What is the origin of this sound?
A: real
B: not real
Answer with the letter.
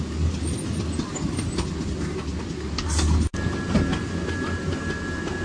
A